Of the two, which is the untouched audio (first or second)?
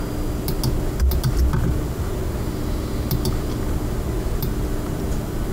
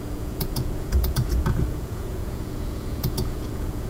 first